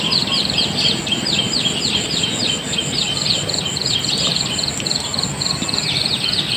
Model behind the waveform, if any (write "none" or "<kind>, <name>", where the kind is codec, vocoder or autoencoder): none